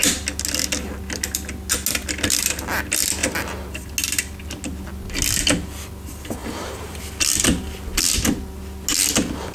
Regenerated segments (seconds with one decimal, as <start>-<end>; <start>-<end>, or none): 3.2-3.9; 6.4-7.0